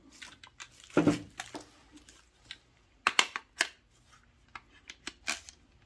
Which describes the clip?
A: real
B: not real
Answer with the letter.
A